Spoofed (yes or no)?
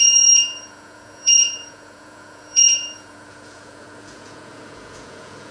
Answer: yes